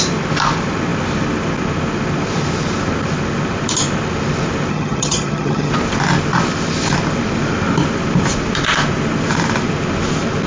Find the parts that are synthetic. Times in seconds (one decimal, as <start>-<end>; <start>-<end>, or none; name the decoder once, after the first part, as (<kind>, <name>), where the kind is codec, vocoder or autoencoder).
4.7-5.7 (vocoder, HiFi-GAN)